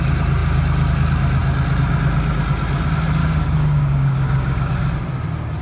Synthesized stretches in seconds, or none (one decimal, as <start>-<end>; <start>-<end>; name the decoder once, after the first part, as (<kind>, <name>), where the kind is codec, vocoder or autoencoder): 3.2-4.7 (codec, DAC)